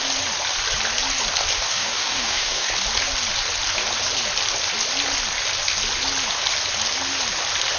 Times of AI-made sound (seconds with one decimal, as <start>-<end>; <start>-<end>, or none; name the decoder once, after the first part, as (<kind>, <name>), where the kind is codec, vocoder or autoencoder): 1.7-2.7 (codec, DAC)